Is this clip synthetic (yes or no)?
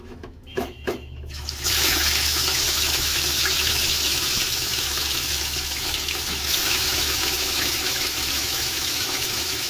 yes